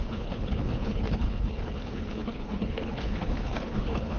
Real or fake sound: fake